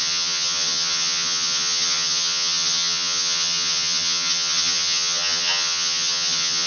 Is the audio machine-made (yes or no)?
yes